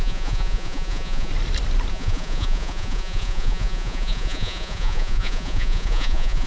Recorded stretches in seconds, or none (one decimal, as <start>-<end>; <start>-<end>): 1.3-1.9